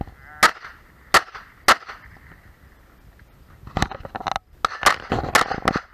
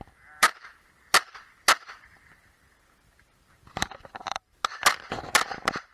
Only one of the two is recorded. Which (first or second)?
first